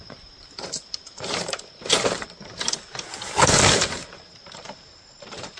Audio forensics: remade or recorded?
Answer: remade